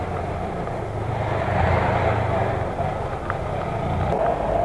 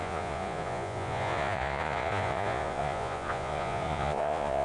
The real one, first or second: first